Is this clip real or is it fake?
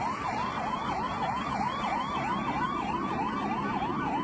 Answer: fake